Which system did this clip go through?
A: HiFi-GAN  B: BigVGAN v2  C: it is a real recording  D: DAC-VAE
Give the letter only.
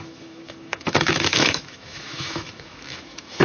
D